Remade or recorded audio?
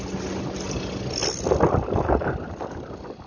recorded